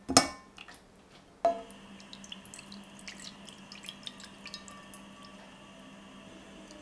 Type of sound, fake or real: real